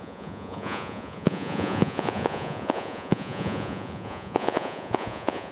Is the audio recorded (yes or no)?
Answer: no